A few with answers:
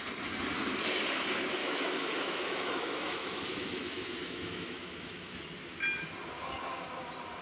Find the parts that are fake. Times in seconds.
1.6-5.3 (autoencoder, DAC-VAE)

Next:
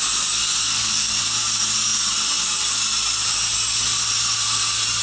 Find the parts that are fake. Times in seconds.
0.6-1.1 (codec, SNAC)